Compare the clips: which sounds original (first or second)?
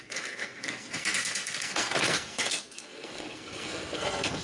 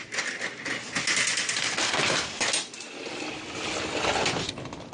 second